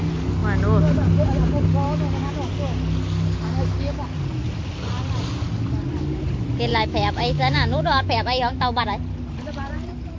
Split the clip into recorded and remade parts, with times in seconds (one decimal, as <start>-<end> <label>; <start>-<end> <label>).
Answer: 0.0-6.7 recorded; 6.7-8.8 remade; 8.8-10.2 recorded